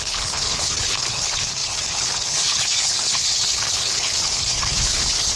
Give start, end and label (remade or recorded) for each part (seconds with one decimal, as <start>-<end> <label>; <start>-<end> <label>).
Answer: 0.0-5.4 remade